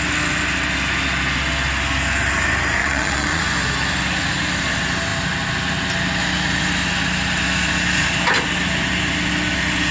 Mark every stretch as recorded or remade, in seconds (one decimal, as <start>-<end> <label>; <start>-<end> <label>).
0.0-2.8 recorded; 2.8-3.4 remade; 3.4-9.9 recorded